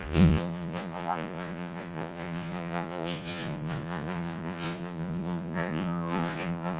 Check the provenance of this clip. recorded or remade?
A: remade